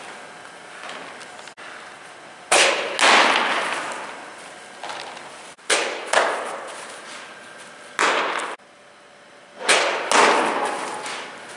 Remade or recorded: recorded